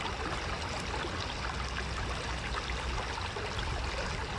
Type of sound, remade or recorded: recorded